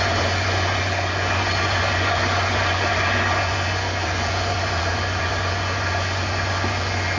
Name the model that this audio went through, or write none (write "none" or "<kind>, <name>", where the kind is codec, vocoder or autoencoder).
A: vocoder, Vocos